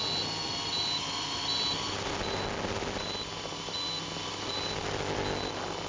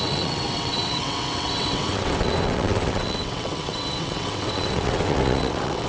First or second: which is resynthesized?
second